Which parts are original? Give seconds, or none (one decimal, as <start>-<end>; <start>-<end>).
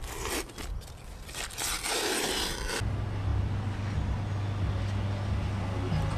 0.0-6.2